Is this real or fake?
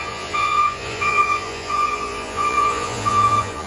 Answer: fake